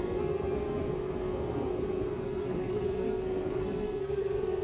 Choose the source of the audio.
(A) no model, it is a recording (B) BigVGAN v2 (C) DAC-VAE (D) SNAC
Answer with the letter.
D